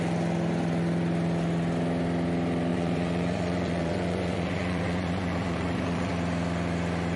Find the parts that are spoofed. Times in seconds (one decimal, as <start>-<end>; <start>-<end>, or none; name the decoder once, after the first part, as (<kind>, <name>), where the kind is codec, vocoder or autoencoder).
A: 2.7-6.1 (vocoder, Vocos)